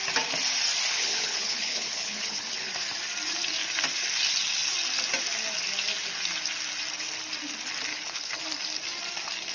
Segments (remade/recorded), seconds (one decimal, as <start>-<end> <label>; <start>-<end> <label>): 0.0-0.9 recorded; 0.9-2.7 remade; 2.7-7.9 recorded; 7.9-8.4 remade; 8.4-9.5 recorded